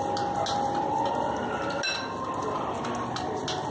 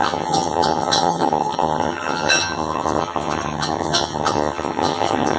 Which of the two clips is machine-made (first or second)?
second